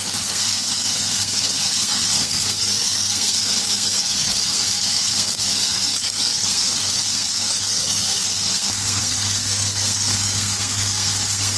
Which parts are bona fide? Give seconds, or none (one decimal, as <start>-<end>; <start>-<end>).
none